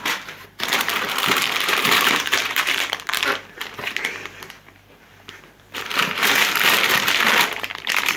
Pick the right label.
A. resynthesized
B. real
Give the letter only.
A